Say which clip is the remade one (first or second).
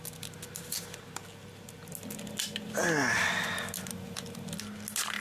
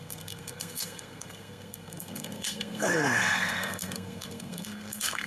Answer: second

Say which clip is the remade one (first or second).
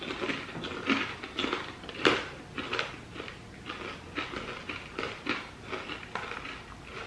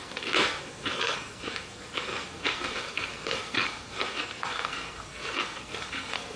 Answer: second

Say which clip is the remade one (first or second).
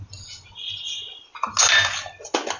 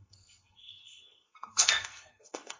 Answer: second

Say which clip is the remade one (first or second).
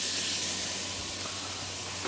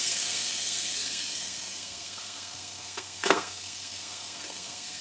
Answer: second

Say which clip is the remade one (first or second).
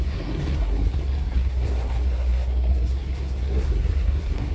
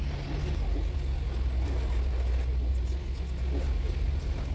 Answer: first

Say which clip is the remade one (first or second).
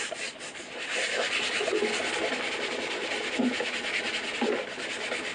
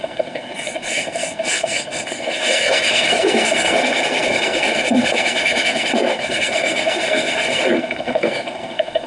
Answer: second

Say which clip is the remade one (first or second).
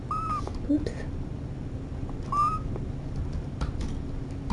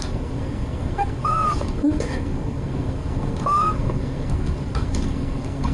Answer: second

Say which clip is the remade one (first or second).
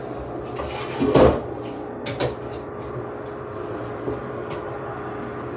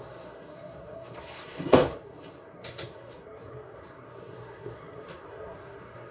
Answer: second